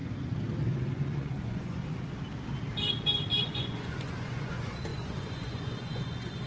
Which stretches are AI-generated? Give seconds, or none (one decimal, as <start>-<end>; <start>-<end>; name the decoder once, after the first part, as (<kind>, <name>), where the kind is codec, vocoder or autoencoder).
0.6-1.8 (vocoder, Vocos); 3.4-6.5